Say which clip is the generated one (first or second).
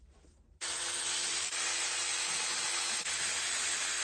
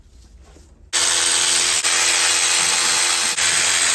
first